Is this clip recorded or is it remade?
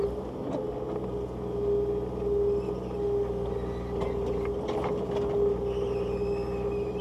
recorded